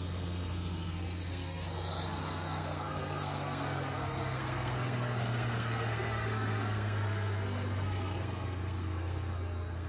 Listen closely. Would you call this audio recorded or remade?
remade